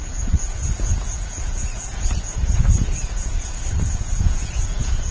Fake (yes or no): yes